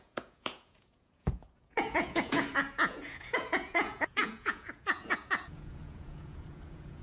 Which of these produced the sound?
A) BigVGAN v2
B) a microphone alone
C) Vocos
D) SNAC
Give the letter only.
C